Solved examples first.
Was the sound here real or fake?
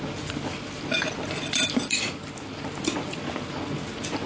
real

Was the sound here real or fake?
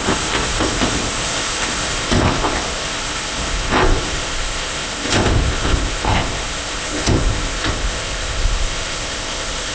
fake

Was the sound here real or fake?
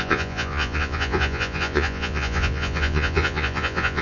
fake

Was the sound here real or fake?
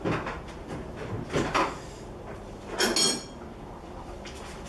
real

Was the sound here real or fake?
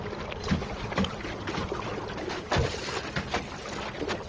real